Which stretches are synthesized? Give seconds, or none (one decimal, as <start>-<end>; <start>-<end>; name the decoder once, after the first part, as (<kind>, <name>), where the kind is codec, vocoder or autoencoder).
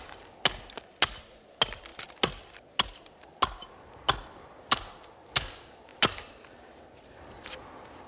none